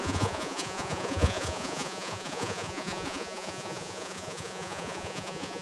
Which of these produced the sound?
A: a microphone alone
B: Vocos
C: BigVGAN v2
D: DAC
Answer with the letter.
B